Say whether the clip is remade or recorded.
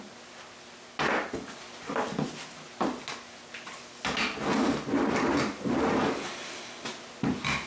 recorded